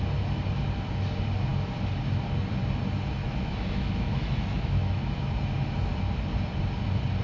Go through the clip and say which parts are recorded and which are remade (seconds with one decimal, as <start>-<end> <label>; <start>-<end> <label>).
0.0-3.2 recorded; 3.2-5.3 remade; 5.3-7.2 recorded